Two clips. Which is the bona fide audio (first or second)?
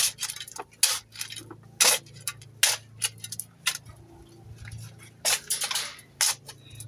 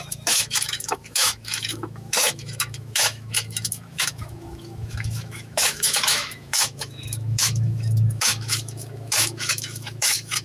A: first